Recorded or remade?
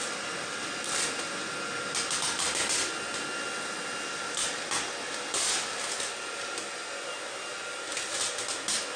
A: recorded